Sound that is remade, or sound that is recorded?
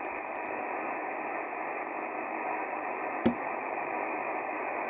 recorded